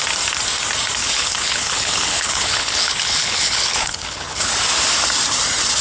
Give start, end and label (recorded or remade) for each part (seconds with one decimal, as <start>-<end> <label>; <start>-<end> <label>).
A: 0.0-1.0 recorded; 1.0-4.5 remade; 4.5-5.8 recorded